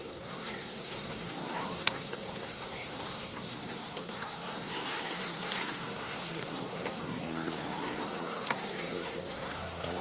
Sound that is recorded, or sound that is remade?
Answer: remade